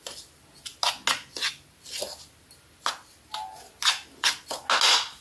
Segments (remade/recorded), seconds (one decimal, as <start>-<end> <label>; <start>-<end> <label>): 0.0-5.2 recorded